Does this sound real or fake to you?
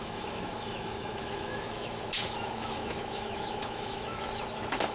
fake